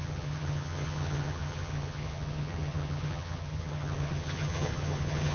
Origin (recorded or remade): remade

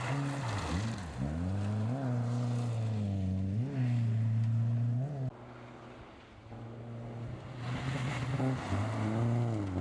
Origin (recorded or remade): recorded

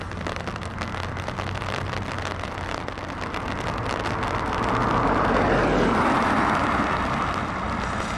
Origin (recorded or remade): recorded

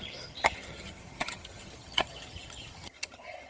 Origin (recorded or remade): remade